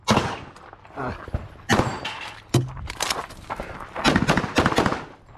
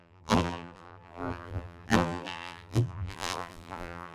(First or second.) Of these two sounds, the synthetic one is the second